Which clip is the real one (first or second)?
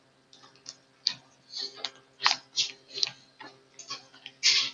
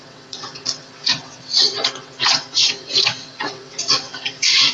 first